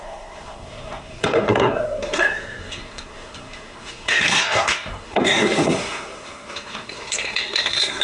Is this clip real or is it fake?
fake